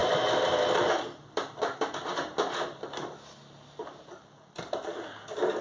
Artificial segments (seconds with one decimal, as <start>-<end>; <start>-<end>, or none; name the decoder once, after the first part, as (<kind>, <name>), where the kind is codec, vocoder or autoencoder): 0.0-3.4 (vocoder, BigVGAN v2)